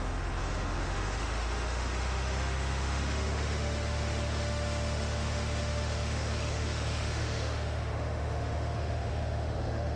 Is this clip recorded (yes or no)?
no